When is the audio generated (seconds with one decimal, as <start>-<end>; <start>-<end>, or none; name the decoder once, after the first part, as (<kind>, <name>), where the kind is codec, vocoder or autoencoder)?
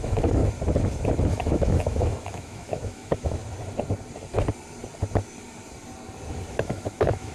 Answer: 0.0-0.4 (autoencoder, DAC-VAE); 1.3-3.4; 6.5-7.3